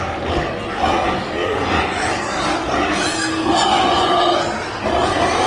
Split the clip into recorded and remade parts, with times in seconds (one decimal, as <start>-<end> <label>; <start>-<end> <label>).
0.0-1.4 recorded; 1.4-2.0 remade; 2.0-3.4 recorded; 3.4-4.2 remade; 4.2-5.5 recorded